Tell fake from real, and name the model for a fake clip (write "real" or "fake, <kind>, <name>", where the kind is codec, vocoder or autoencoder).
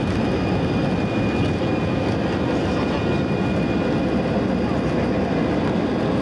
real